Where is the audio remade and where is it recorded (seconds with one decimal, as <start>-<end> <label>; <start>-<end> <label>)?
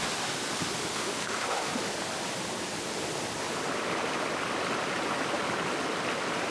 0.0-0.9 recorded; 0.9-1.7 remade; 1.7-6.5 recorded